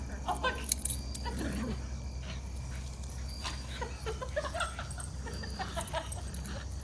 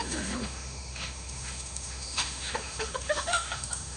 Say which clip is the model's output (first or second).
second